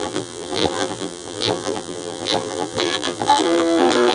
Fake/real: fake